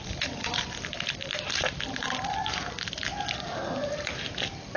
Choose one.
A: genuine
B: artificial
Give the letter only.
A